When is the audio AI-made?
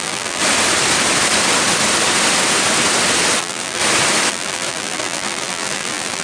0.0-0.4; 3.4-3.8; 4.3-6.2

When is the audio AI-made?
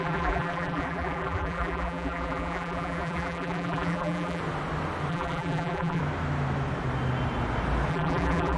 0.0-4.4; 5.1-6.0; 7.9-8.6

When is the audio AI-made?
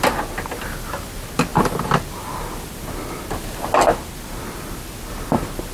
none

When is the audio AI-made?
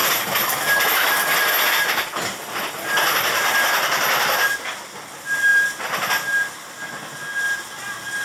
0.0-4.9; 5.5-6.3